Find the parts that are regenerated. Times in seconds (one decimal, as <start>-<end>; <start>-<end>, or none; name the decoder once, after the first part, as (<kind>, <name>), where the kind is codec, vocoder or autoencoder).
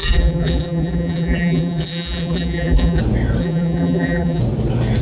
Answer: 0.0-3.0 (vocoder, BigVGAN v2); 3.4-4.4